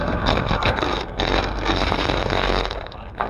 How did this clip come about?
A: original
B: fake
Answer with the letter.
B